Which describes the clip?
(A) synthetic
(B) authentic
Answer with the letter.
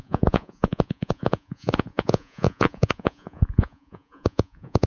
A